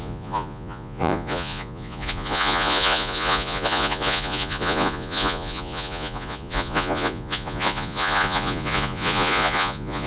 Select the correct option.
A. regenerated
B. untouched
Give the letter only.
A